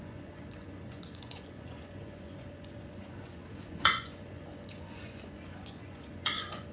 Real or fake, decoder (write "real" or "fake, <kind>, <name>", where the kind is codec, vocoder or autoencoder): fake, vocoder, Vocos